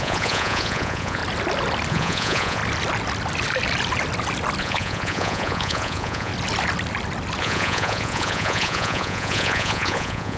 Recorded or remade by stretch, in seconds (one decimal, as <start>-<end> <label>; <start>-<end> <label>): 0.0-1.2 remade; 1.2-1.9 recorded; 1.9-2.6 remade; 2.6-4.6 recorded; 4.6-6.3 remade; 6.3-7.4 recorded; 7.4-10.4 remade

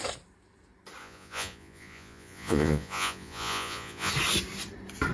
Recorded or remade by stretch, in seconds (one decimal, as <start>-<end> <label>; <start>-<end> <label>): 0.0-1.0 recorded; 1.0-4.1 remade; 4.1-5.1 recorded

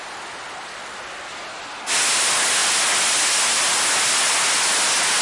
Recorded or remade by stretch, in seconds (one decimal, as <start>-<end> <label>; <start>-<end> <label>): 0.0-5.2 recorded

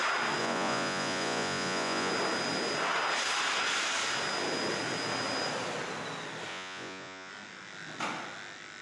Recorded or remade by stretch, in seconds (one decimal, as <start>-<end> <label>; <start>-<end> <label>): 0.0-0.4 recorded; 0.4-2.1 remade; 2.1-6.5 recorded; 6.5-7.3 remade; 7.3-8.8 recorded

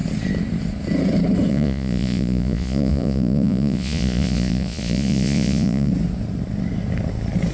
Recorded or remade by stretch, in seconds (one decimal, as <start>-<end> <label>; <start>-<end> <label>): 0.0-1.5 recorded; 1.5-5.9 remade; 5.9-7.5 recorded

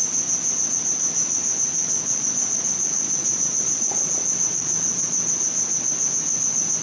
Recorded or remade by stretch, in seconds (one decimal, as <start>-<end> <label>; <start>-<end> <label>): 0.0-1.8 recorded; 1.8-5.3 remade; 5.3-6.8 recorded

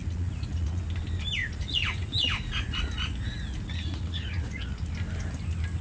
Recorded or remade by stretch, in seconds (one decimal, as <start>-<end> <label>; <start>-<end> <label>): 0.0-0.8 remade; 0.8-1.4 recorded; 1.4-4.9 remade; 4.9-5.8 recorded

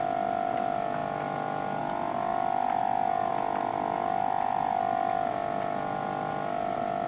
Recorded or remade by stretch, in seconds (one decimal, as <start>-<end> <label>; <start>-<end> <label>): 0.0-7.1 recorded